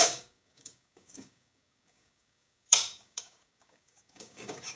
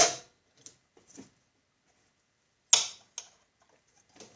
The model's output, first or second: first